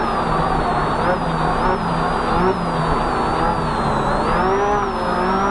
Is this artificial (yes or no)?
no